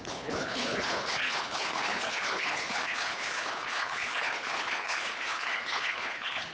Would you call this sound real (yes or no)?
no